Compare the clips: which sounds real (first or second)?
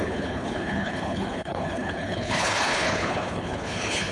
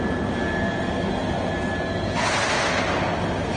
second